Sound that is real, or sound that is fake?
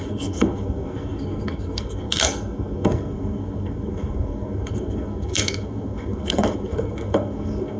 fake